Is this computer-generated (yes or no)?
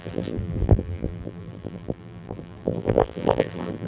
yes